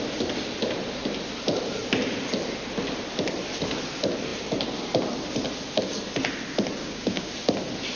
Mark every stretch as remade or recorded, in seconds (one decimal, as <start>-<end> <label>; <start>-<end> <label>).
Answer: 0.0-6.8 recorded; 6.8-7.3 remade; 7.3-8.0 recorded